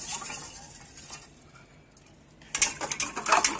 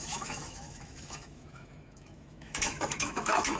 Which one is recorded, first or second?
first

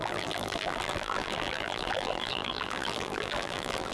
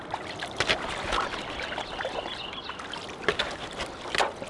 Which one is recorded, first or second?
second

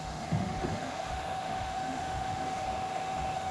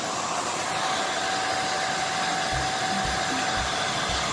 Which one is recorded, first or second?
second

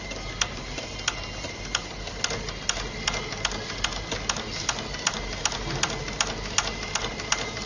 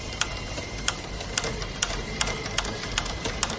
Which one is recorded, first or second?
first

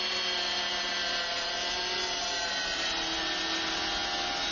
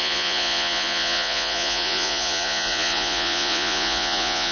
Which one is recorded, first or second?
first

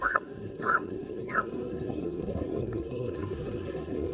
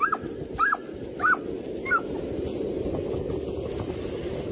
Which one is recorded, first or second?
second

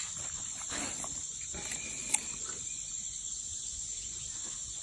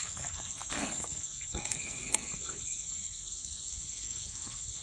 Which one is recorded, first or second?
first